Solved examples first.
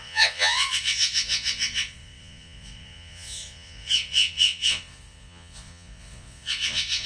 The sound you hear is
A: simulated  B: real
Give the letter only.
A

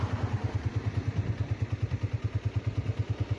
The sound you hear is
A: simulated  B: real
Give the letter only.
B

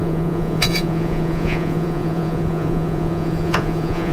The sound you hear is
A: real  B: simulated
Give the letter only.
B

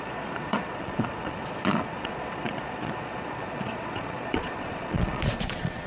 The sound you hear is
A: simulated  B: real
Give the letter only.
A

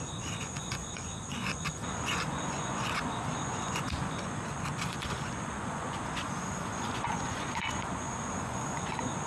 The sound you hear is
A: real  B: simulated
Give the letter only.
B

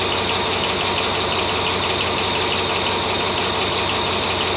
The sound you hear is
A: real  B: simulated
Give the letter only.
A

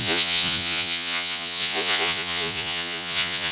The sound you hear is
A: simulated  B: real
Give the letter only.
A